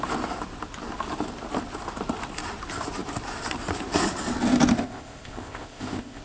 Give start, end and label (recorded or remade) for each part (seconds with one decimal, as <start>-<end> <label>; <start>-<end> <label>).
0.0-4.7 recorded; 4.7-6.2 remade